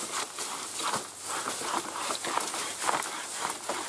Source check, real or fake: real